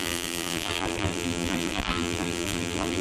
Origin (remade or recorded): remade